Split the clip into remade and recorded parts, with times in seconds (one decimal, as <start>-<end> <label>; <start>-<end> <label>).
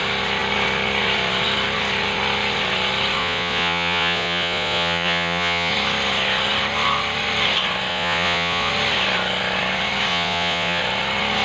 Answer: 0.0-3.2 recorded; 3.2-5.7 remade; 5.7-7.9 recorded; 7.9-8.7 remade; 8.7-10.1 recorded; 10.1-10.8 remade; 10.8-11.4 recorded